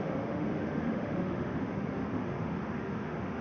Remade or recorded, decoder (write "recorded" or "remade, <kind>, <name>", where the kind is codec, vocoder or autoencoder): remade, autoencoder, DAC-VAE